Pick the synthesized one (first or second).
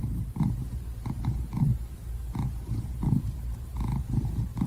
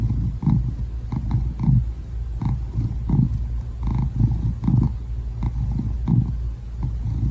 first